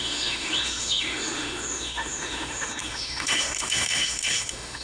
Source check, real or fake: fake